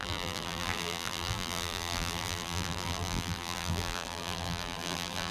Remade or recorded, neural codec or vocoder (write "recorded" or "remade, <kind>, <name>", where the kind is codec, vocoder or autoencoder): remade, vocoder, BigVGAN v2